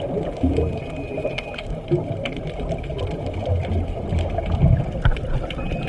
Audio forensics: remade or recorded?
recorded